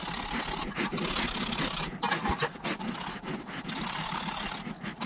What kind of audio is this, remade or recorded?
recorded